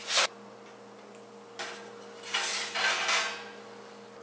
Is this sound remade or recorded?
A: recorded